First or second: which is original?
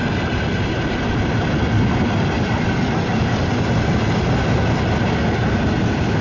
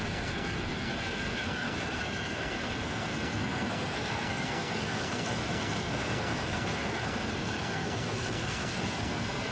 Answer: first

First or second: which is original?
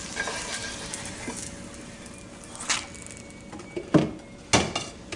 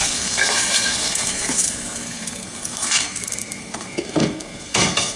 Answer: first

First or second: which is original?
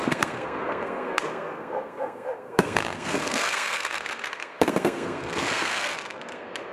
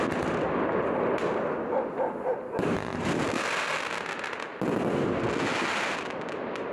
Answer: second